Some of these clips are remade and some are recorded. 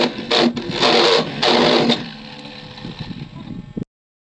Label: recorded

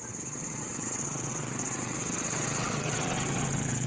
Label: remade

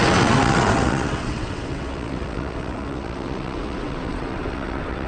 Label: remade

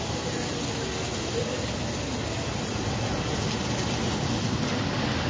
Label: recorded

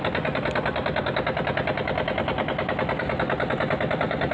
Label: recorded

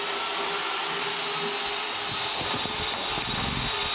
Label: recorded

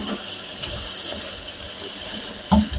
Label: recorded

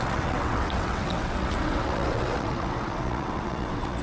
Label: remade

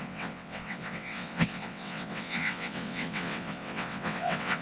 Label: remade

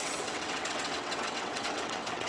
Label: remade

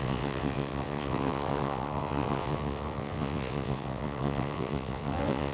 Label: remade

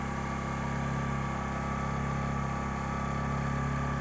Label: recorded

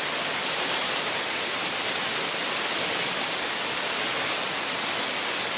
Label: recorded